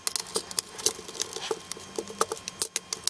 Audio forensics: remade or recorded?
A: recorded